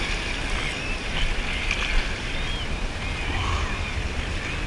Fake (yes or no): no